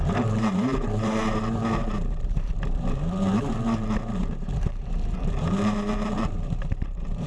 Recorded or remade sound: remade